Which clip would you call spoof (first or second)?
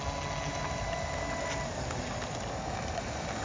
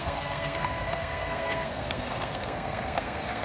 second